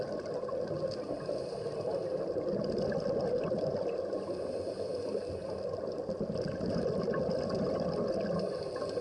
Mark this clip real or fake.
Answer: real